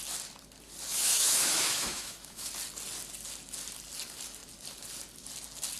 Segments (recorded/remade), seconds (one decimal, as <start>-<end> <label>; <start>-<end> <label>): 0.0-0.9 recorded; 0.9-2.5 remade; 2.5-5.8 recorded

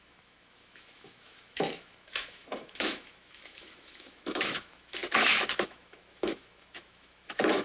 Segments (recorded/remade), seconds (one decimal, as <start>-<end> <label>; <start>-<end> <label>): 0.0-7.6 remade